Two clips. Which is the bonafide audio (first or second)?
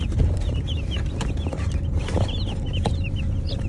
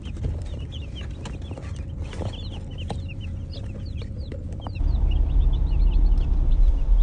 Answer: second